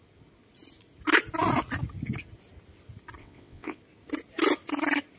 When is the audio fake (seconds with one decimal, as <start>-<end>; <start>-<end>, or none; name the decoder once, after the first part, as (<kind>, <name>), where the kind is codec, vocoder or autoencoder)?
3.2-3.8 (vocoder, WaveNeXt)